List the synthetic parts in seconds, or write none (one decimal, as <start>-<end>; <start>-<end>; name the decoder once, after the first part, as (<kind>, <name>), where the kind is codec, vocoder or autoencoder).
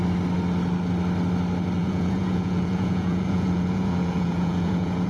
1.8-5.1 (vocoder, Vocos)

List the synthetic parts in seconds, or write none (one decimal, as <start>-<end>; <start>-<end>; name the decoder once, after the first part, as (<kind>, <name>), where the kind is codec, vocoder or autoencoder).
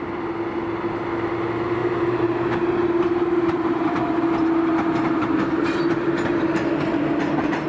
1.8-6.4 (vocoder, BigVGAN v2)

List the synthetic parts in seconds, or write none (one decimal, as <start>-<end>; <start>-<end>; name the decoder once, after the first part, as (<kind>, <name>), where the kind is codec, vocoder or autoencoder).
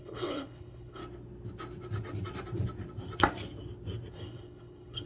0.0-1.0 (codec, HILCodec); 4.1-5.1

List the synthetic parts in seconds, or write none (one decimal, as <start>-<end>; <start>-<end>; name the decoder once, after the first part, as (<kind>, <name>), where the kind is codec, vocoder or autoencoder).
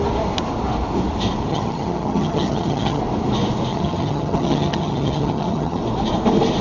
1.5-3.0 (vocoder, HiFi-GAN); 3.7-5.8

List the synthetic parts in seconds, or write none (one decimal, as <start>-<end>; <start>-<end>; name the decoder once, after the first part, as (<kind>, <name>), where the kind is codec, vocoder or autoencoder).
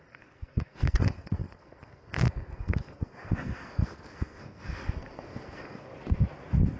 0.0-5.9 (codec, SNAC)